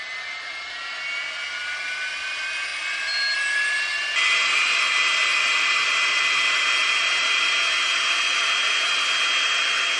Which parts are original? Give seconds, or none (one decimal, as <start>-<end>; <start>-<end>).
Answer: 0.0-10.0